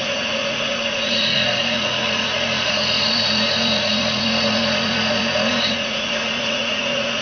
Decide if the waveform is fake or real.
fake